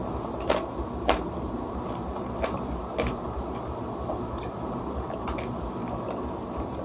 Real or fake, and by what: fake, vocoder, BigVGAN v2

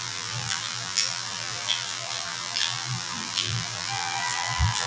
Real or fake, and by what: fake, vocoder, BigVGAN v2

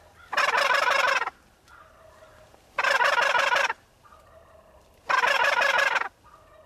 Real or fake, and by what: real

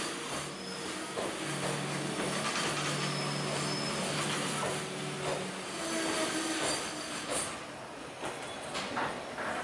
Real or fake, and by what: real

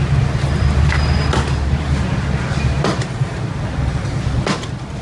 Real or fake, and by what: real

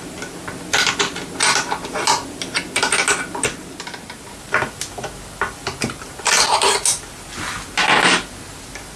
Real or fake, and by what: real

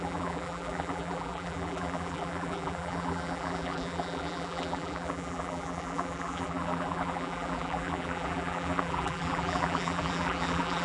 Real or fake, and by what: fake, vocoder, BigVGAN v2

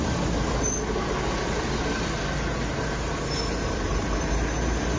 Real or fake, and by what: real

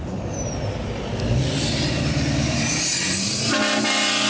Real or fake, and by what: fake, vocoder, BigVGAN v2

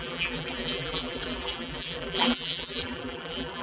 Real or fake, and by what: fake, vocoder, BigVGAN v2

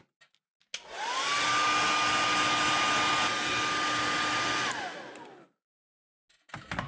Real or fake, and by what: real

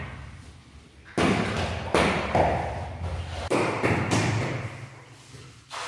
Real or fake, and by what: real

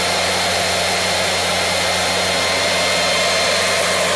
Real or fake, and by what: real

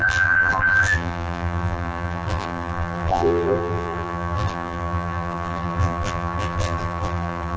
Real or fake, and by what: fake, vocoder, BigVGAN v2